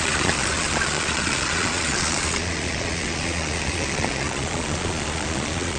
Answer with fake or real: fake